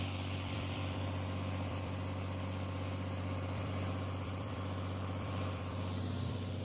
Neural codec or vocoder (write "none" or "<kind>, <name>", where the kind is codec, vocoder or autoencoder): vocoder, BigVGAN v2